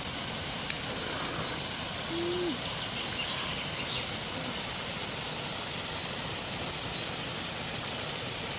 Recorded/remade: recorded